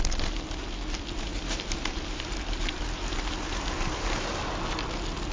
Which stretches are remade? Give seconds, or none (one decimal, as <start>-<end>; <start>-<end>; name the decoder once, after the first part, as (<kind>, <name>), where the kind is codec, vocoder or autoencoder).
1.3-4.4 (vocoder, BigVGAN v2)